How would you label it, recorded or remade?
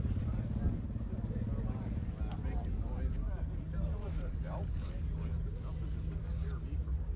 recorded